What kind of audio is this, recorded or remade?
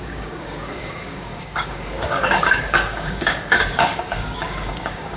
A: remade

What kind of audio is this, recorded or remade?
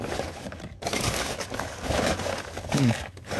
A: remade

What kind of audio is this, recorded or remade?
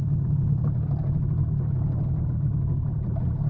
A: recorded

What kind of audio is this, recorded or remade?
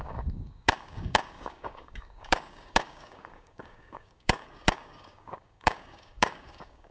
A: remade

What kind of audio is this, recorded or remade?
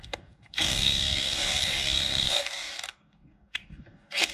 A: remade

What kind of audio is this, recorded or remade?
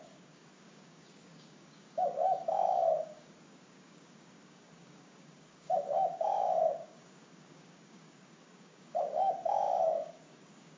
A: remade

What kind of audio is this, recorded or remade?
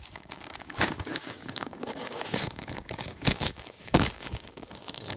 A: remade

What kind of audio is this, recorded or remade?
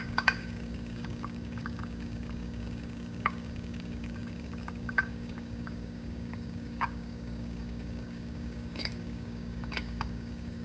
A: remade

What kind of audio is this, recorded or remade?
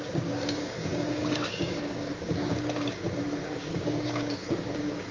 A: remade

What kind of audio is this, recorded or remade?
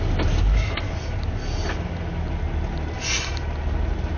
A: recorded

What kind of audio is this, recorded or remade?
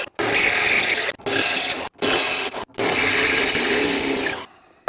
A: recorded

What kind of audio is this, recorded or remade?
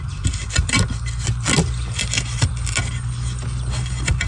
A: recorded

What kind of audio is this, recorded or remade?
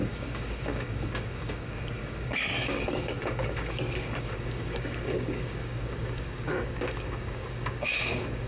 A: remade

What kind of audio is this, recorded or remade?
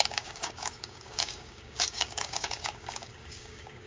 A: remade